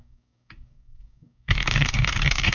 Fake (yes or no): yes